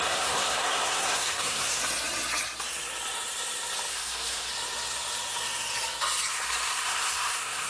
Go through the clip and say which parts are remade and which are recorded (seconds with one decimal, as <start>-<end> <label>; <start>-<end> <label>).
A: 0.0-1.8 remade; 1.8-3.9 recorded; 3.9-4.5 remade; 4.5-6.3 recorded; 6.3-7.7 remade